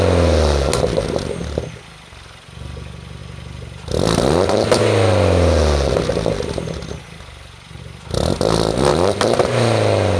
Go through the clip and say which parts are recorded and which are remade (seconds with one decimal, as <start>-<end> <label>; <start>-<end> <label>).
0.0-10.2 recorded